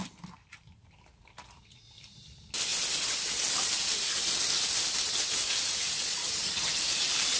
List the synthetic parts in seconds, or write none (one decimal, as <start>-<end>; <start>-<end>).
6.2-6.8